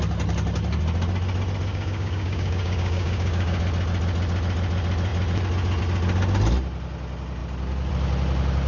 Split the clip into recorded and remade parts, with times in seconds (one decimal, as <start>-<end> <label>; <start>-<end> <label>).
0.0-1.7 recorded; 1.7-3.6 remade; 3.6-8.7 recorded